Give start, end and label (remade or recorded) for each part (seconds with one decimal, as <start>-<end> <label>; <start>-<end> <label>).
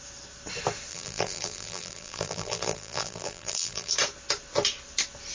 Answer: 0.0-0.9 recorded; 0.9-3.9 remade; 3.9-5.3 recorded